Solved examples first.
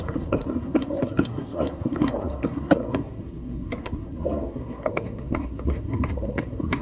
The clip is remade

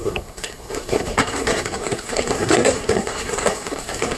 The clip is remade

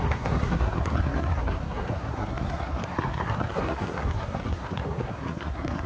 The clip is remade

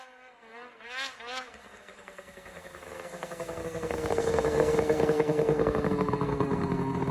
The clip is remade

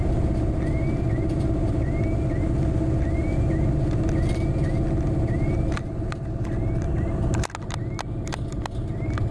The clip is recorded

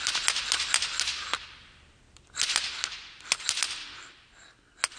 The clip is recorded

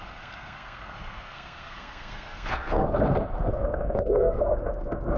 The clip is remade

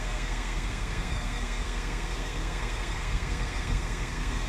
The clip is remade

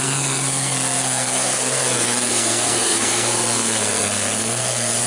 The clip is remade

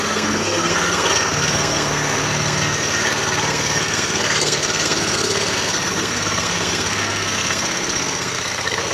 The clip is remade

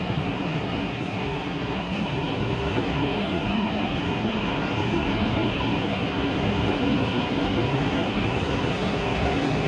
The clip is remade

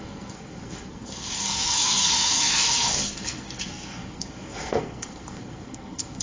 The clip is remade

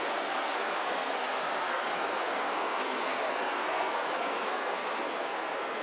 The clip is remade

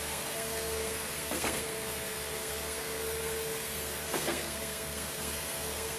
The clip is remade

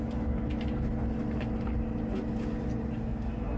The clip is recorded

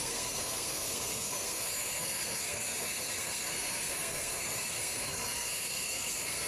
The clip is remade